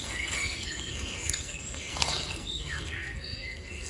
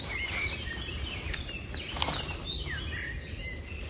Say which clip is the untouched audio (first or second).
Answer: second